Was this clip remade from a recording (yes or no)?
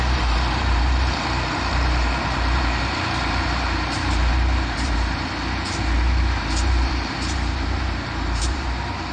yes